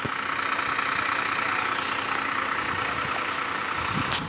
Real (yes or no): yes